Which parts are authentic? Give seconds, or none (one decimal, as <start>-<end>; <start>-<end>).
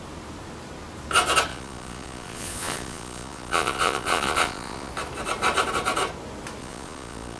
0.0-1.5; 4.9-6.6